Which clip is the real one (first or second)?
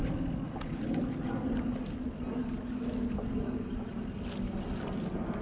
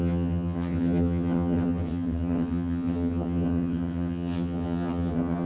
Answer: first